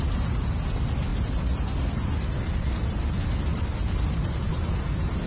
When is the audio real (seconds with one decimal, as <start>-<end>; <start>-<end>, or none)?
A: 0.0-3.5